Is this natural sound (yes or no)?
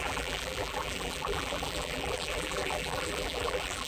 no